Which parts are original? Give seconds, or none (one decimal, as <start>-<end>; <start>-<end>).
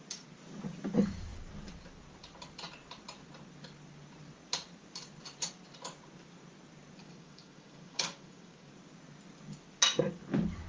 0.0-7.0; 8.7-10.7